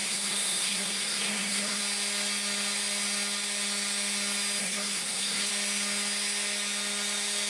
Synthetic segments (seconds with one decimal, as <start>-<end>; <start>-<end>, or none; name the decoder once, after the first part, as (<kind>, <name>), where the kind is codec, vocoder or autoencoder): 0.0-1.8 (codec, SNAC); 4.6-5.5